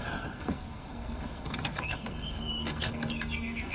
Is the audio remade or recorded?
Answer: remade